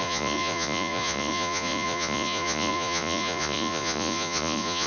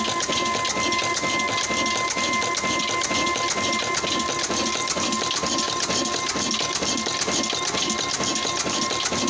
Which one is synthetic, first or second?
first